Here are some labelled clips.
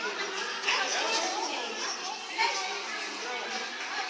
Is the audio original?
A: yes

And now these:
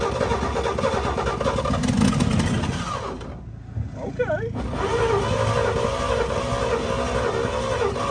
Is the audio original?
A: yes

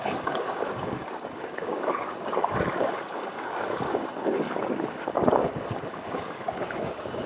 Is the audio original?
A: no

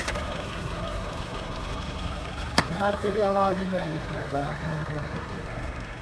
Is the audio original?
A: no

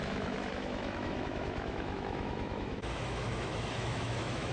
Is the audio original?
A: no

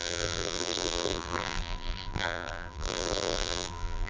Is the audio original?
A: no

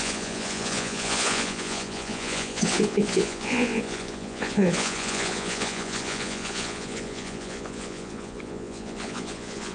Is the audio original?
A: no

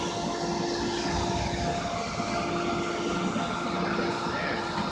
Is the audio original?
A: yes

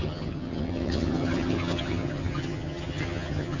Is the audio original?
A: no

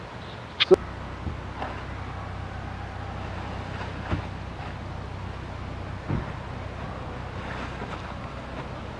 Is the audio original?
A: yes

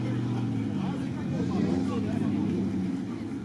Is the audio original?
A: yes